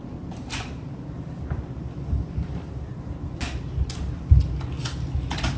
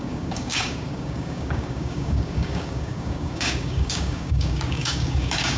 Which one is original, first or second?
first